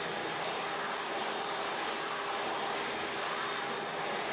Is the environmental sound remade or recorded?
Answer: recorded